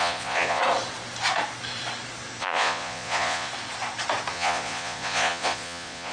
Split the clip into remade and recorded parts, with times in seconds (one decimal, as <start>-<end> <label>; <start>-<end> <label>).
0.0-0.6 remade; 0.6-2.4 recorded; 2.4-3.5 remade; 3.5-4.3 recorded; 4.3-6.1 remade